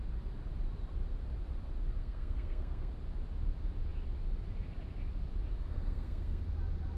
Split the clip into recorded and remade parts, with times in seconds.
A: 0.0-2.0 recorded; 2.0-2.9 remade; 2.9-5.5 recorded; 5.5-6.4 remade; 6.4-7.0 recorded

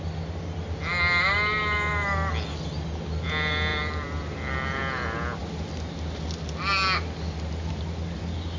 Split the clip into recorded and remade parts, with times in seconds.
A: 0.0-8.6 recorded

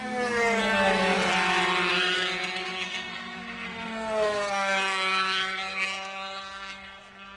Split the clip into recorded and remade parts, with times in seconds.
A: 0.0-1.3 remade; 1.3-1.9 recorded; 1.9-7.4 remade

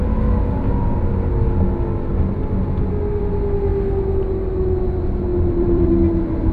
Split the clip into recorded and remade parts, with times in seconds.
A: 0.0-5.3 recorded; 5.3-5.9 remade; 5.9-6.5 recorded

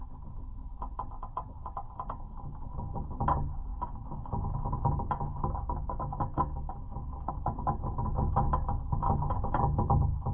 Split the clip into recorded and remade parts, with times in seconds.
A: 0.0-3.7 recorded; 3.7-7.3 remade; 7.3-10.3 recorded